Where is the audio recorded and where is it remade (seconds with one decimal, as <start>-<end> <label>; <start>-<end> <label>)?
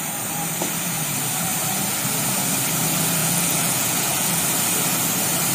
0.0-3.2 recorded; 3.2-4.4 remade; 4.4-5.5 recorded